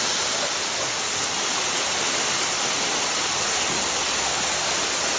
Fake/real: real